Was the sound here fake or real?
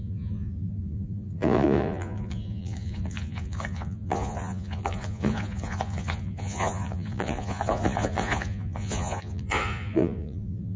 fake